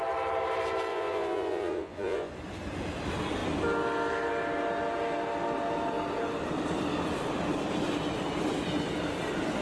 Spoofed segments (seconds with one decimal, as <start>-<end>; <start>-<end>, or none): 0.9-2.3